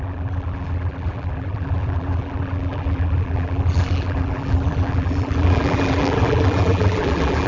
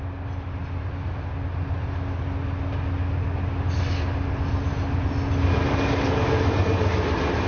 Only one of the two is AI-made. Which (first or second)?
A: first